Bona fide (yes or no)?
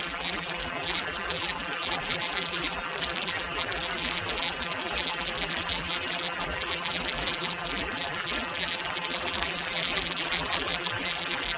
no